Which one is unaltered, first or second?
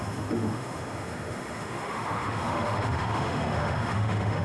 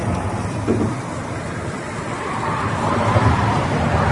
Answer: second